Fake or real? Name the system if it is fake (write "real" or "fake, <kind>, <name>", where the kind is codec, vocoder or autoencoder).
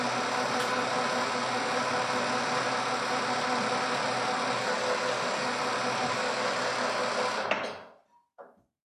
real